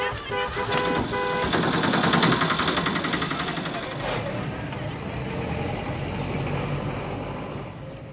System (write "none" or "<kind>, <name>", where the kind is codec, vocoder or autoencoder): none